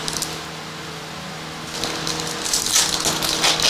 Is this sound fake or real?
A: real